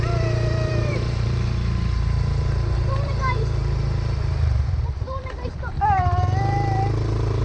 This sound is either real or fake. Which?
fake